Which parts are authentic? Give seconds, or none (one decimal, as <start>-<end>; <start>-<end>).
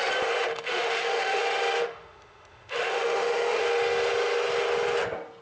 0.0-0.5; 1.4-1.8; 3.6-5.4